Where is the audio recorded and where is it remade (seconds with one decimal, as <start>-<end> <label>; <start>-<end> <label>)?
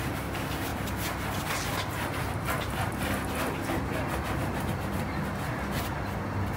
0.0-6.6 recorded